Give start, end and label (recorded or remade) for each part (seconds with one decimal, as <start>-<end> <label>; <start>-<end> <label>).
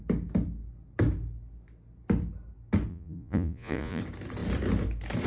0.0-2.9 recorded; 2.9-4.0 remade; 4.0-5.3 recorded